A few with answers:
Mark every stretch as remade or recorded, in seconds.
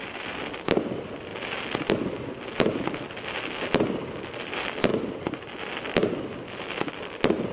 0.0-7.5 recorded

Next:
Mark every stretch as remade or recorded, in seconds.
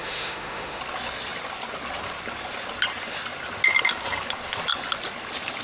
0.0-0.8 remade; 0.8-5.6 recorded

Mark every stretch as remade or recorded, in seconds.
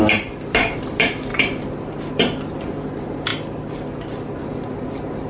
0.0-1.3 recorded; 1.3-2.6 remade; 2.6-3.3 recorded; 3.3-4.4 remade; 4.4-5.3 recorded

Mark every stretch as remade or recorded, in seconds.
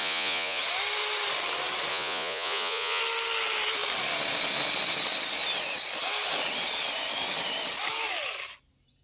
0.0-0.6 remade; 0.6-1.9 recorded; 1.9-3.0 remade; 3.0-9.0 recorded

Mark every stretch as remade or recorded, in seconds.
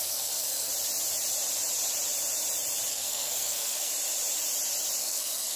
0.0-0.7 remade; 0.7-2.9 recorded; 2.9-3.9 remade; 3.9-5.0 recorded; 5.0-5.6 remade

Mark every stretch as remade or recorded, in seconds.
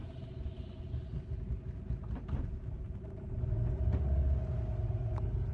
0.0-5.5 recorded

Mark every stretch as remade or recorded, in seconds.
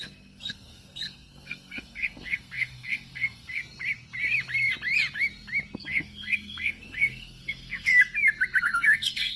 0.0-3.6 remade; 3.6-5.8 recorded; 5.8-7.9 remade; 7.9-8.6 recorded; 8.6-9.4 remade